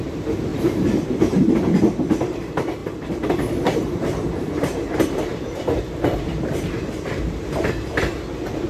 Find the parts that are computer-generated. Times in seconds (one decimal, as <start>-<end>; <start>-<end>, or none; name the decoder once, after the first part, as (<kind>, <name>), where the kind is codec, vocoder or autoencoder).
0.5-1.5 (vocoder, BigVGAN v2); 2.8-7.7